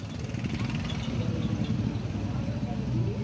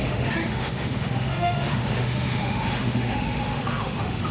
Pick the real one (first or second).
first